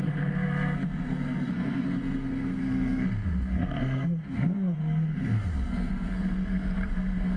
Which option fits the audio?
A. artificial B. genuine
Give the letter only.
A